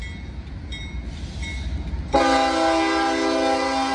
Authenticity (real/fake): real